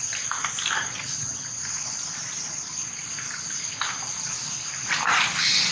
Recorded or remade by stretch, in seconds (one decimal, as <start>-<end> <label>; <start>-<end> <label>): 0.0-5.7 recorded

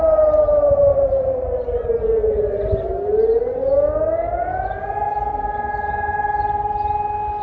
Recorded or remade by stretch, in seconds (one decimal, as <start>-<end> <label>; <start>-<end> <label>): 0.0-0.9 remade; 0.9-5.3 recorded; 5.3-7.4 remade

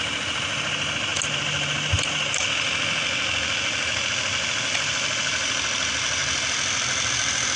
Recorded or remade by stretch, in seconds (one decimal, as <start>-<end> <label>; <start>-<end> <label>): 0.0-7.6 recorded

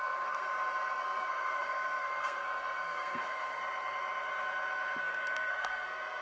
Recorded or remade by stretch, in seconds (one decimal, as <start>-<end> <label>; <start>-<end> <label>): 0.0-0.5 remade; 0.5-1.0 recorded; 1.0-3.6 remade; 3.6-5.0 recorded; 5.0-6.2 remade

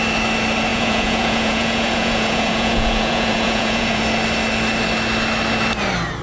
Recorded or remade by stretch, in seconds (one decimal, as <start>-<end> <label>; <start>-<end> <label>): 0.0-0.7 recorded; 0.7-4.0 remade; 4.0-6.2 recorded